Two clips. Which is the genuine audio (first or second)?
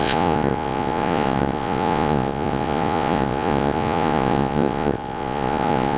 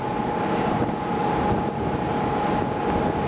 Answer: second